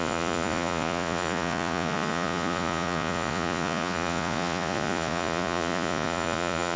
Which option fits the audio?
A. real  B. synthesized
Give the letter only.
B